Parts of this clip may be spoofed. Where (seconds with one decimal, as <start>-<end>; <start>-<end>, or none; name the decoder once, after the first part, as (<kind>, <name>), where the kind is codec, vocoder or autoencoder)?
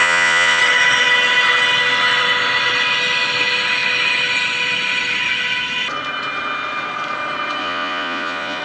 0.0-0.6 (vocoder, Vocos); 7.6-8.6